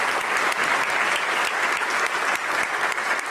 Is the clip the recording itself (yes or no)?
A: no